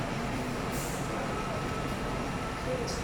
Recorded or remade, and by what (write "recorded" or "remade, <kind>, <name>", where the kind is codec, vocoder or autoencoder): remade, vocoder, BigVGAN v2